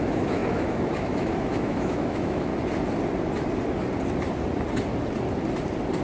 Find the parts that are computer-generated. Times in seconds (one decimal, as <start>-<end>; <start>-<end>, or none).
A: 0.0-2.5